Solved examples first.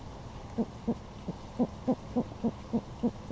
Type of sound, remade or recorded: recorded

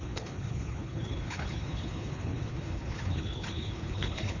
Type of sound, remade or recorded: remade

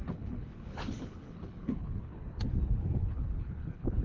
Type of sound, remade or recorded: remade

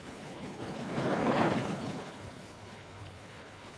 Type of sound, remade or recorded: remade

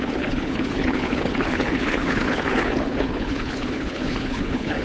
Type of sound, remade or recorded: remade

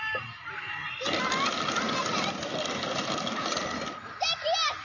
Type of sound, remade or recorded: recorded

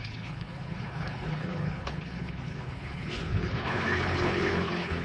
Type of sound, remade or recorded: remade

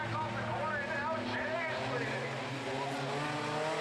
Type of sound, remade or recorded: recorded